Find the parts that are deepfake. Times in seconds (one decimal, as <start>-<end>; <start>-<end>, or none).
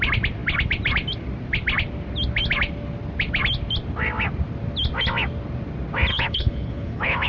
6.1-7.3